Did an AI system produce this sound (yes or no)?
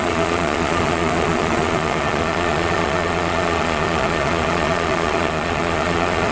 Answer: yes